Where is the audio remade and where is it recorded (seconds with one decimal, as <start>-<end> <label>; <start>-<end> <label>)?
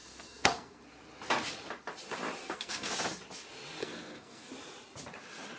0.0-0.8 remade; 0.8-2.4 recorded; 2.4-2.9 remade; 2.9-3.8 recorded; 3.8-4.5 remade; 4.5-5.6 recorded